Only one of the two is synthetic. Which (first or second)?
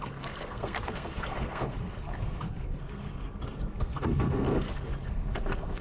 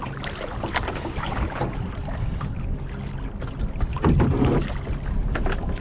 first